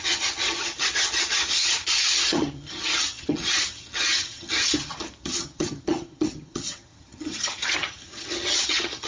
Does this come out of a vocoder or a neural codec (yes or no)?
yes